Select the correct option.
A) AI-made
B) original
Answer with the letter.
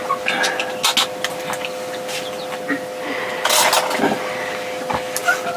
B